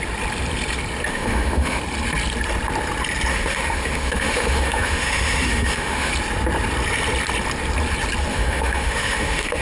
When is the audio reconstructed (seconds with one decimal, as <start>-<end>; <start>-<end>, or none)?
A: 1.1-1.8; 3.3-6.1; 8.3-9.6

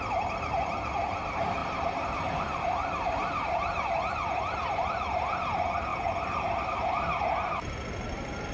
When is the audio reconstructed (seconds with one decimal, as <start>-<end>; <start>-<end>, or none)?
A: 0.0-1.6; 2.4-8.5

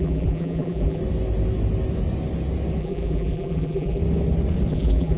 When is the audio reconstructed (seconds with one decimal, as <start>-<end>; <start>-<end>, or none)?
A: 0.0-1.0; 2.8-4.0; 4.7-5.2

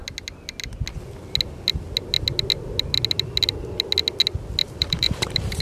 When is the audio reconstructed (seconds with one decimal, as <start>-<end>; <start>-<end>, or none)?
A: 4.6-5.6